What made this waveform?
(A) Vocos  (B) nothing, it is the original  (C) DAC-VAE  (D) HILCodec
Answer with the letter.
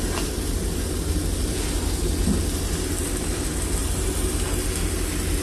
B